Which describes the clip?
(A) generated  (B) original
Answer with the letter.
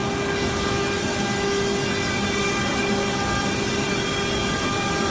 B